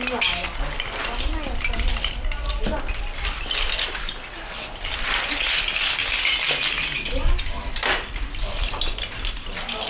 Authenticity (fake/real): real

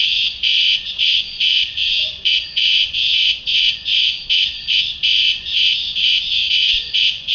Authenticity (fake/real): fake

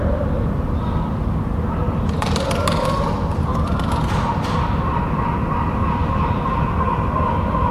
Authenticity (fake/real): fake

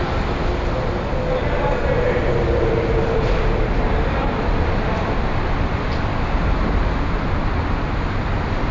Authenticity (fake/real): real